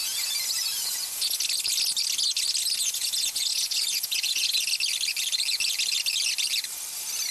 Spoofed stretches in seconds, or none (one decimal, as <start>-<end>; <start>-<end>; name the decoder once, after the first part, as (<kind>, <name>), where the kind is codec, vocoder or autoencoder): 0.0-1.4 (vocoder, Vocos); 2.8-4.6